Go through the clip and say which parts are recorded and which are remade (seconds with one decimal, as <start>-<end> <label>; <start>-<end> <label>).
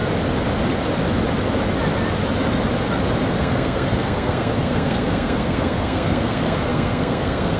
0.0-3.4 recorded; 3.4-7.6 remade